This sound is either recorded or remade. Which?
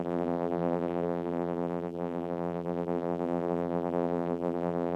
remade